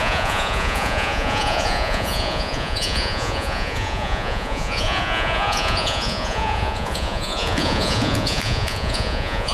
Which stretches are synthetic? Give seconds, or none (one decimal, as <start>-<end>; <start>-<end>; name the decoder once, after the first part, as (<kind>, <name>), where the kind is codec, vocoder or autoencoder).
0.0-9.5 (vocoder, Vocos)